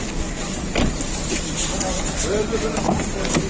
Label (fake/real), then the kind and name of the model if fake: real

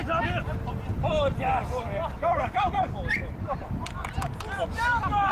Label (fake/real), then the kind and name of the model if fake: real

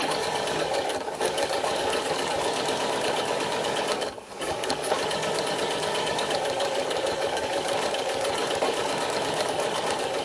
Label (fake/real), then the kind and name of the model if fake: fake, codec, DAC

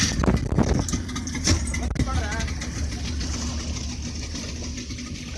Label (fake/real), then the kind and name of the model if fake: real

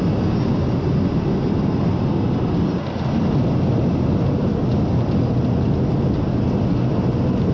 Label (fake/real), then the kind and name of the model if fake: real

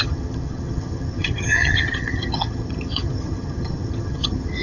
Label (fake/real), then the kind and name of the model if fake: fake, vocoder, HiFi-GAN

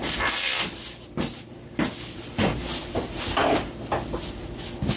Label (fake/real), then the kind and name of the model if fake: real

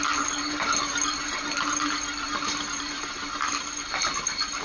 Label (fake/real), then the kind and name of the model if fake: real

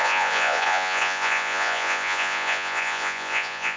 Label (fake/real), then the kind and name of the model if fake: fake, vocoder, Vocos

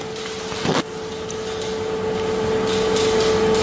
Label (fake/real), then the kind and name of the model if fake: real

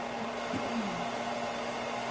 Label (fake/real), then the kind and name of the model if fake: real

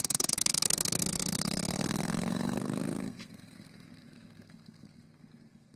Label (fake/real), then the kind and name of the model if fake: fake, codec, SNAC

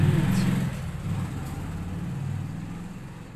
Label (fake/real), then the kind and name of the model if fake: real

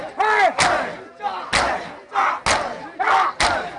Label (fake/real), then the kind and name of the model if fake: real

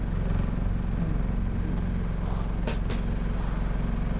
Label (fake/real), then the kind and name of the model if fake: real